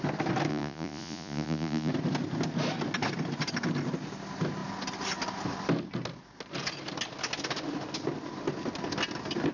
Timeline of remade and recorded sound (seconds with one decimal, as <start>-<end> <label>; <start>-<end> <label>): 0.0-0.5 recorded; 0.5-1.9 remade; 1.9-9.5 recorded